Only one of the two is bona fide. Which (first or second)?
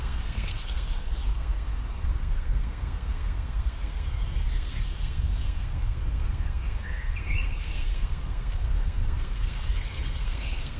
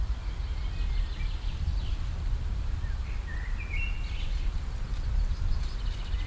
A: second